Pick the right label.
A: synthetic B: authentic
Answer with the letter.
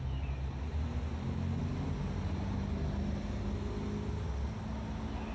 B